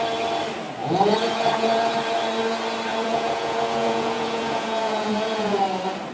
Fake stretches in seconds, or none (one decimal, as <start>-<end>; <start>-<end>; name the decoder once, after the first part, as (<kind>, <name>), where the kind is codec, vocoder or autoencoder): 0.8-1.9 (vocoder, Vocos); 2.9-5.6